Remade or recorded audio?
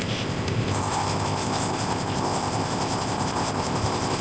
remade